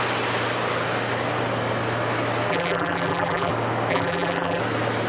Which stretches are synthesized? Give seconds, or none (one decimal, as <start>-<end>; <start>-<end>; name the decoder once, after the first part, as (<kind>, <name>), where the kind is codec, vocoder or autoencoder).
2.5-3.5 (vocoder, BigVGAN v2); 3.9-4.6